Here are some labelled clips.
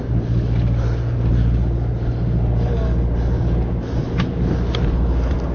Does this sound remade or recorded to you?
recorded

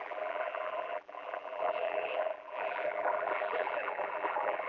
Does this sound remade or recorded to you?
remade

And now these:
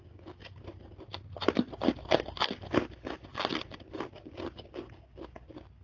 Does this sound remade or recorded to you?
recorded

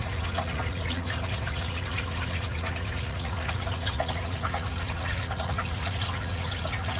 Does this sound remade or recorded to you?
remade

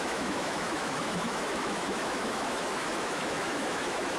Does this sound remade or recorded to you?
remade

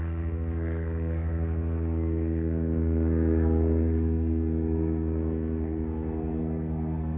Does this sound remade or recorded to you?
remade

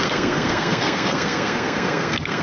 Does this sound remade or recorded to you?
remade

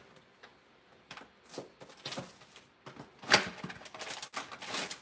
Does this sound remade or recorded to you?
recorded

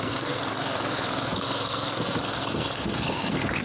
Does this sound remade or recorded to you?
remade